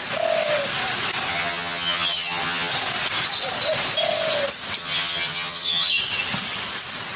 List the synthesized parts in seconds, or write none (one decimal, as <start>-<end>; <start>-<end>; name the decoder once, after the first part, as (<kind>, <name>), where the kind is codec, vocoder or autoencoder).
1.3-2.7 (vocoder, HiFi-GAN); 4.8-6.0